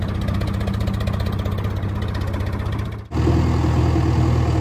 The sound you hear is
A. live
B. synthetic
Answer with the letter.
A